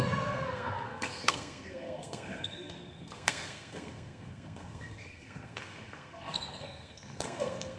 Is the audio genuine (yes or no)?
no